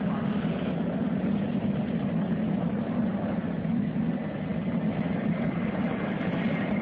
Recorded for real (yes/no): yes